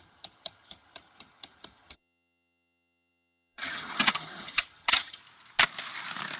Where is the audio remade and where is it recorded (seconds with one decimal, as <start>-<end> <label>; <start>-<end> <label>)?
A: 0.0-5.2 remade; 5.2-6.4 recorded

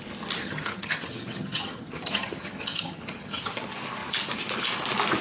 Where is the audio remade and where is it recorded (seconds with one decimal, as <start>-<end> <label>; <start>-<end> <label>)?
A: 0.0-0.4 recorded; 0.4-3.5 remade; 3.5-5.2 recorded

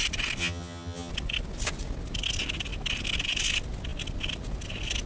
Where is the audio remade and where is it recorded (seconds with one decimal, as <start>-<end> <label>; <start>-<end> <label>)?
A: 0.0-0.4 recorded; 0.4-1.1 remade; 1.1-5.1 recorded

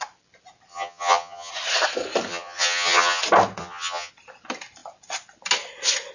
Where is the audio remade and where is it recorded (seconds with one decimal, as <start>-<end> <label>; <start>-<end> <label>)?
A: 0.0-0.7 recorded; 0.7-1.5 remade; 1.5-2.3 recorded; 2.3-3.2 remade; 3.2-3.6 recorded; 3.6-4.1 remade; 4.1-6.1 recorded

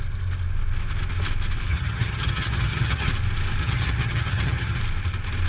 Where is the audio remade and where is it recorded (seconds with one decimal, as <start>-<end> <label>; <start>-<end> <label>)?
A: 0.0-1.7 recorded; 1.7-3.1 remade; 3.1-3.6 recorded; 3.6-4.8 remade; 4.8-5.5 recorded

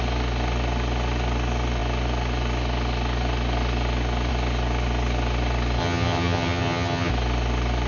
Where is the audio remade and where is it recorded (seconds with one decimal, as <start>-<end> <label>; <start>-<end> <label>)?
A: 0.0-5.8 recorded; 5.8-7.1 remade; 7.1-7.9 recorded

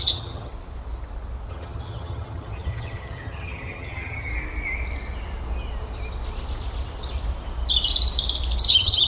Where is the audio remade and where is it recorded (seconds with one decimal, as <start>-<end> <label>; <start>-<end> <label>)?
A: 0.0-0.5 remade; 0.5-1.5 recorded; 1.5-4.3 remade; 4.3-8.7 recorded; 8.7-9.1 remade